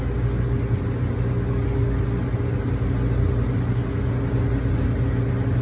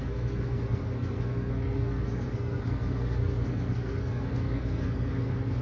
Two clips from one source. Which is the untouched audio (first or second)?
first